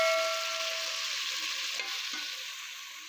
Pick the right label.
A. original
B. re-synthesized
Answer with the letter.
A